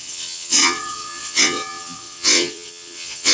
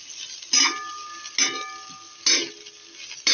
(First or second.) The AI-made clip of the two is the first